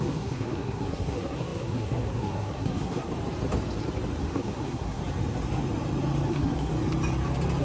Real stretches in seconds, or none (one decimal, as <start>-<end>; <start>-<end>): 3.1-4.2; 5.0-6.3; 6.7-7.6